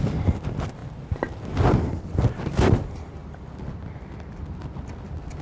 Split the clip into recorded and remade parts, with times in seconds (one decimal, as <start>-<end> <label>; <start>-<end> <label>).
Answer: 0.0-0.8 remade; 0.8-2.0 recorded; 2.0-3.2 remade; 3.2-4.6 recorded; 4.6-5.4 remade